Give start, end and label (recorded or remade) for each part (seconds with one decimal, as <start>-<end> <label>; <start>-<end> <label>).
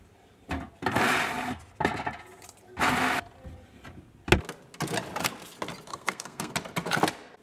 0.0-5.9 recorded; 5.9-6.5 remade; 6.5-7.4 recorded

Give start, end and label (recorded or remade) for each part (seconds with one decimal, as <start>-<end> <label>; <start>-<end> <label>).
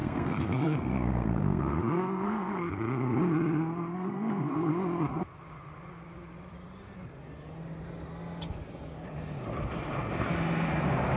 0.0-2.7 remade; 2.7-3.9 recorded; 3.9-4.7 remade; 4.7-11.2 recorded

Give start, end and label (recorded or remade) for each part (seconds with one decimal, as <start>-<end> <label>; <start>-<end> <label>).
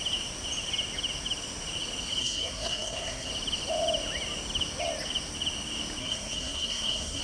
0.0-2.2 recorded; 2.2-3.3 remade; 3.3-6.0 recorded; 6.0-7.2 remade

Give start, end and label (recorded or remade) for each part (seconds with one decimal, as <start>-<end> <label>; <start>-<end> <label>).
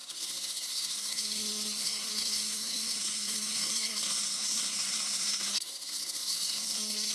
0.0-7.1 remade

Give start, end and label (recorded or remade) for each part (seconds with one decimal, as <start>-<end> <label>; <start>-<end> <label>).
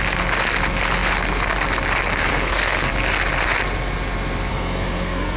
0.0-2.3 recorded; 2.3-2.9 remade; 2.9-4.5 recorded; 4.5-5.4 remade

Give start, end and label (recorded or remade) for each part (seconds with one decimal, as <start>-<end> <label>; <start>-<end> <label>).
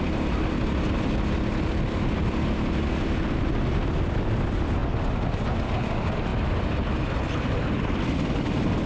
0.0-8.9 recorded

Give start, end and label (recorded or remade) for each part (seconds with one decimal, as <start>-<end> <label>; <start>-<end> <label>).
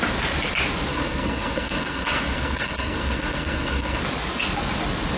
0.0-0.9 recorded; 0.9-4.0 remade; 4.0-5.2 recorded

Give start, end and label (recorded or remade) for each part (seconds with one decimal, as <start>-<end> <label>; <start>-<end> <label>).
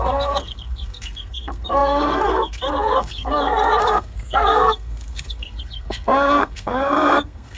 0.0-7.6 remade